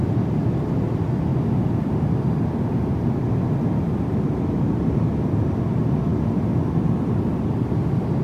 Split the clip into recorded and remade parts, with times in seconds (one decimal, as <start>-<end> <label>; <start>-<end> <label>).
0.0-8.2 recorded